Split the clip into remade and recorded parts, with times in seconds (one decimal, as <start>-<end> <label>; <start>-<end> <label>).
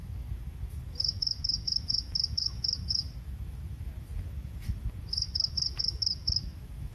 0.0-6.9 remade